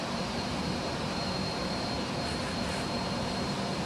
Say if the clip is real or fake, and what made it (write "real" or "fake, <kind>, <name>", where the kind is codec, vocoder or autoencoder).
fake, vocoder, BigVGAN v2